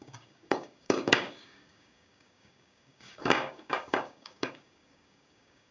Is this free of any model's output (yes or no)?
no